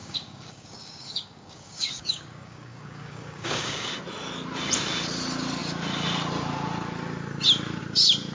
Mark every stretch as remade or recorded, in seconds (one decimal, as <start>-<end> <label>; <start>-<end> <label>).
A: 0.0-3.9 remade; 3.9-8.3 recorded